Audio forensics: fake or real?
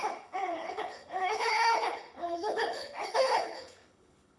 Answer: fake